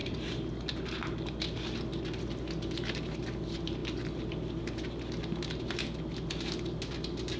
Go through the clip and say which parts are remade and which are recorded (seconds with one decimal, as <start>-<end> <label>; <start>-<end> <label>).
0.0-7.4 recorded